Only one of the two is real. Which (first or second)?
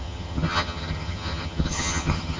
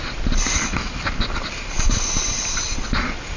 second